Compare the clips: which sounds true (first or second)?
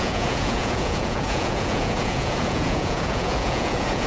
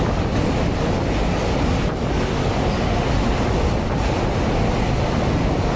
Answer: second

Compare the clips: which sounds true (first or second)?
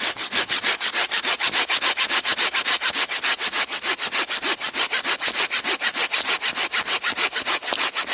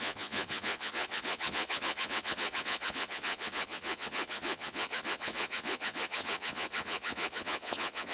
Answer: first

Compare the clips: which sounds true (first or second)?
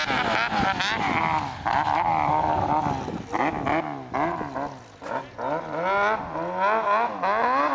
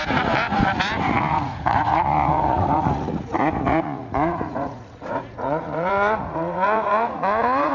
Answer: first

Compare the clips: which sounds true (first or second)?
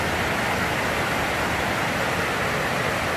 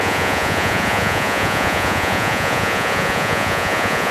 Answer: first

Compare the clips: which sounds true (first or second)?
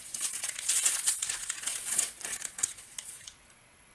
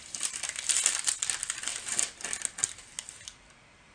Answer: second